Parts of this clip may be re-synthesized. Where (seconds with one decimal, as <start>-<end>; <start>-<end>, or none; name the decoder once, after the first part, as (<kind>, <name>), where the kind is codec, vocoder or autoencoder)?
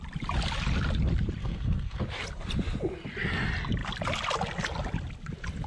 1.4-2.0 (codec, SNAC)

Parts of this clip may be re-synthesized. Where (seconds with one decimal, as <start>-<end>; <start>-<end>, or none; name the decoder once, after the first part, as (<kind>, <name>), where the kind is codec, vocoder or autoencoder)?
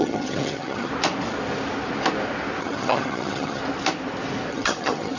0.0-0.9 (vocoder, HiFi-GAN); 2.6-3.6; 4.5-5.2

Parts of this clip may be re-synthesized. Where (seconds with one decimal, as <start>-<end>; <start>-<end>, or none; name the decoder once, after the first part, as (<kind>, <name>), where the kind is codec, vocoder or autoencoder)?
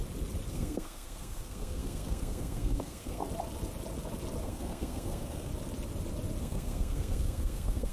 0.5-3.2 (codec, SNAC); 4.4-5.5; 6.4-7.9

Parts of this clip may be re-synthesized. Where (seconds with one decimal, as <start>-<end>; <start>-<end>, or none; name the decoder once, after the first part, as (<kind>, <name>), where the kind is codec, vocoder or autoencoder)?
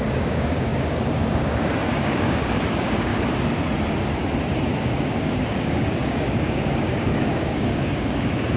0.0-3.1 (codec, DAC); 4.8-8.6